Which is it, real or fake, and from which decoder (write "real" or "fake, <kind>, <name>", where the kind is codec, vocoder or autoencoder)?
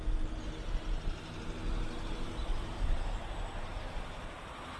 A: real